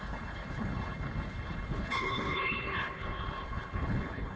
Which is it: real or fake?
fake